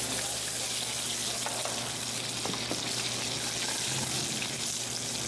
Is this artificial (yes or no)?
no